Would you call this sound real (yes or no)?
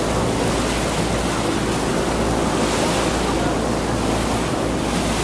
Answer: yes